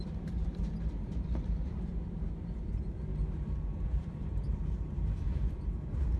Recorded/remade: remade